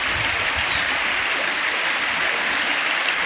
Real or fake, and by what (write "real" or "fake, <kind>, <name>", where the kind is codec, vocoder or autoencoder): real